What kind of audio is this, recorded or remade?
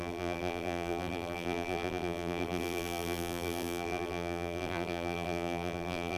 remade